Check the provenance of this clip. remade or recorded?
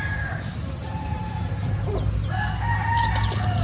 recorded